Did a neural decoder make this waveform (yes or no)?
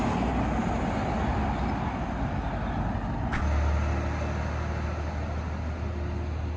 no